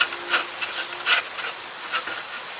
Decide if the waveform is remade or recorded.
recorded